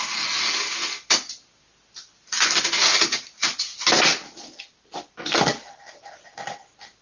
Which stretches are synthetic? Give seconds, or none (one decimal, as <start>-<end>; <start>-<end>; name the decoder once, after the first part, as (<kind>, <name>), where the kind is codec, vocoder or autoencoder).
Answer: none